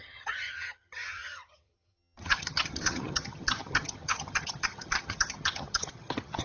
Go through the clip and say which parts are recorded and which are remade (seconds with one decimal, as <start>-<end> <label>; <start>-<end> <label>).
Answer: 0.0-6.4 remade